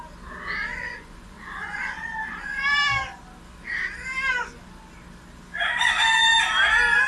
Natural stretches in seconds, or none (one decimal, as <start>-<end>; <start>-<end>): 0.0-0.7; 1.8-7.1